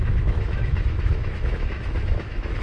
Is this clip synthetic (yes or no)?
yes